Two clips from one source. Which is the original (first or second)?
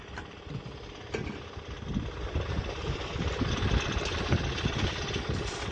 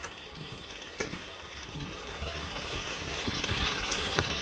first